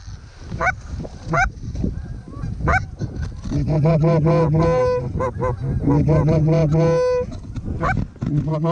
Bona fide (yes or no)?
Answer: yes